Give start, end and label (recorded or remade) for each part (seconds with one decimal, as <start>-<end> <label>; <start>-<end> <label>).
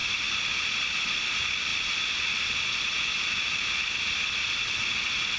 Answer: 0.0-0.8 remade; 0.8-5.4 recorded